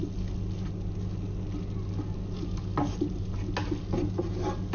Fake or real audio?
real